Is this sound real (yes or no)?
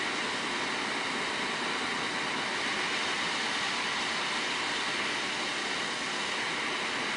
yes